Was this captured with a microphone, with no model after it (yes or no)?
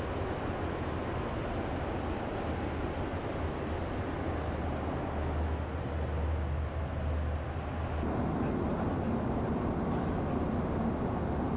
yes